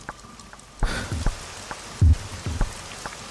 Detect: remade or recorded recorded